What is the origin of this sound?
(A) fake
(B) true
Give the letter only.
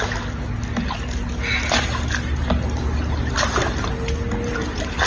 B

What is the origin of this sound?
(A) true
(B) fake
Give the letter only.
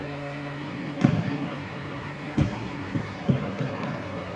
B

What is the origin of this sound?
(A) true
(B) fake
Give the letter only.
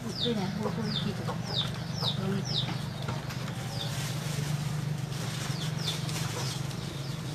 A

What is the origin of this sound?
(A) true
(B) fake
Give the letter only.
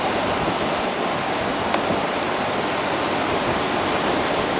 A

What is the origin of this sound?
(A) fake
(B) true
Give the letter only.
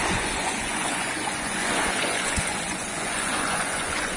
A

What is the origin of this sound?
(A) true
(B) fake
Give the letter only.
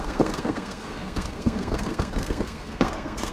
B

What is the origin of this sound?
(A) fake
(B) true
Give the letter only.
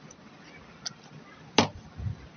B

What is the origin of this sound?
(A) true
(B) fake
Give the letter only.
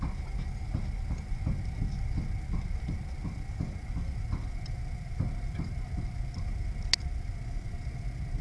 A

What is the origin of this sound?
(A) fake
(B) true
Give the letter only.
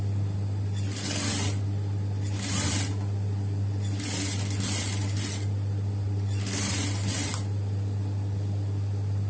B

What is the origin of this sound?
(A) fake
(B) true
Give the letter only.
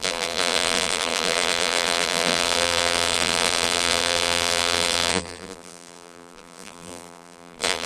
A